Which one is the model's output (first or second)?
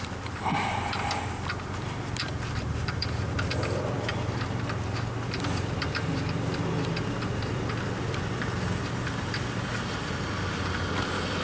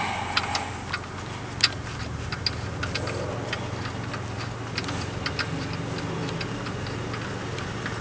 first